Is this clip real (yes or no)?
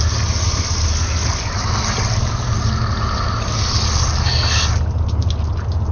yes